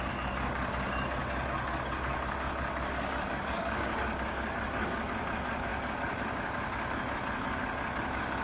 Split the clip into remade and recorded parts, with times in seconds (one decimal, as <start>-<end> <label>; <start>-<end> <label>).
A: 0.0-8.4 remade